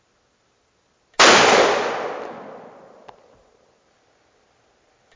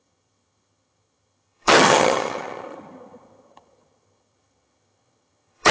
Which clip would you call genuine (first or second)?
first